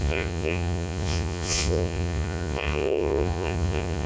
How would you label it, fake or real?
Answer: fake